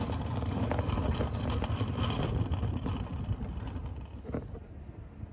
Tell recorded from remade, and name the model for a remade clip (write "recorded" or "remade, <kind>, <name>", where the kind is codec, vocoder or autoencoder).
recorded